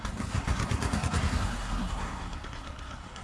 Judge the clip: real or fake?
fake